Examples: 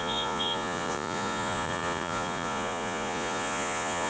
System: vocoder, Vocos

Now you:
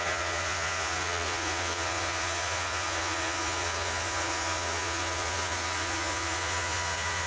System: vocoder, Vocos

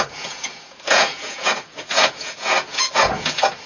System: vocoder, Vocos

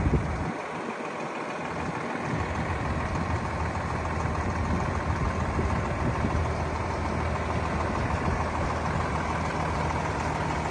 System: none